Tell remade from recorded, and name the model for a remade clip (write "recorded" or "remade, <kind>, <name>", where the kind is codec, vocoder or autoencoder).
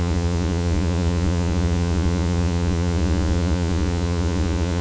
remade, vocoder, Vocos